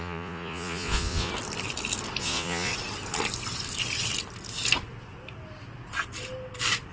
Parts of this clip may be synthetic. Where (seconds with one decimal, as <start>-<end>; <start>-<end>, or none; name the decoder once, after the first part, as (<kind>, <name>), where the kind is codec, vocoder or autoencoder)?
0.0-1.3 (vocoder, Vocos); 2.2-2.7